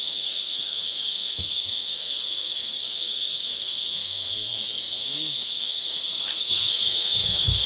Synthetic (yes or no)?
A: yes